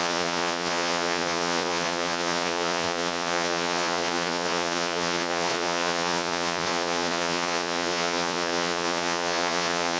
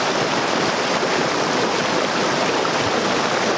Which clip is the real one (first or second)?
second